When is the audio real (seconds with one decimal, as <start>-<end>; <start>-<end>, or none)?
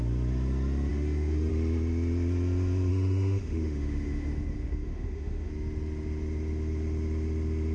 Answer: 0.0-0.9; 1.5-2.9; 5.5-7.7